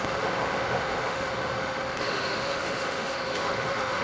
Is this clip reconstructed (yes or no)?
yes